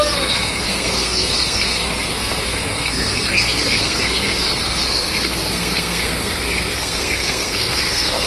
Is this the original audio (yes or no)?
no